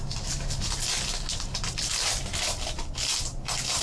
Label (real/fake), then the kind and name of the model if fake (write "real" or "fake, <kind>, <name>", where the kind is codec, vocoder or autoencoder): real